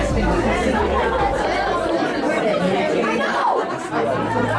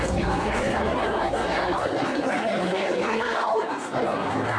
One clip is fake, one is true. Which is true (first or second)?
first